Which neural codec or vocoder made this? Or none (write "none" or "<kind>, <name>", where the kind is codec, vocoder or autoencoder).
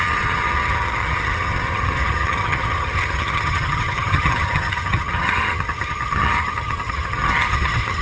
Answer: vocoder, HiFi-GAN